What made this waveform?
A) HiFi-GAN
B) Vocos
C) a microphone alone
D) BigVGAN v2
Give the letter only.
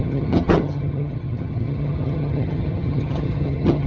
A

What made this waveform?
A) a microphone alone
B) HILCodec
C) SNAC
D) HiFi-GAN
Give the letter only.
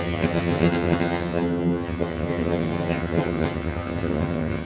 D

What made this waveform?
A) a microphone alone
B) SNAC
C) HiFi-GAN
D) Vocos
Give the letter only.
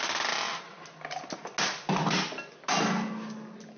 A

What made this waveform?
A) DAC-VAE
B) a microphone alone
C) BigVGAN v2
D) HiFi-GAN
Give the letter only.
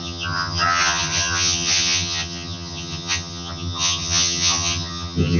D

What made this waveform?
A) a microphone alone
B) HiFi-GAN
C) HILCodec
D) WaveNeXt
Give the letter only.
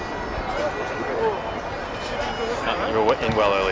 A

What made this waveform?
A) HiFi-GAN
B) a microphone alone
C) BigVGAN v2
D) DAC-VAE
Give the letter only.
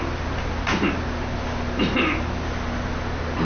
B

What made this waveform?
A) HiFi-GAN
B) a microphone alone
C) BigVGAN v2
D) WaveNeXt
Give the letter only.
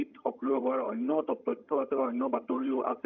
A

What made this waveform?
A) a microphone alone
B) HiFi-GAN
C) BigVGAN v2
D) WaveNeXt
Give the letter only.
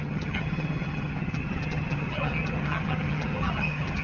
B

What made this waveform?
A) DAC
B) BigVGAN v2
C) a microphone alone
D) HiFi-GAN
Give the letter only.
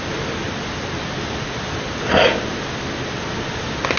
C